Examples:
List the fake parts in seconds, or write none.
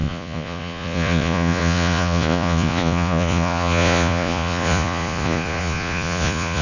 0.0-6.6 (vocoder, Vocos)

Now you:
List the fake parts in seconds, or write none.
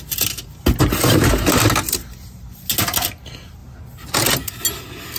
none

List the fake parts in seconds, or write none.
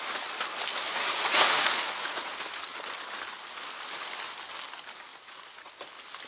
0.9-2.3 (vocoder, Vocos); 5.1-5.7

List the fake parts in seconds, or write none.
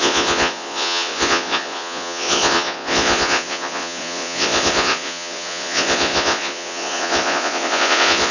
0.0-8.3 (vocoder, Vocos)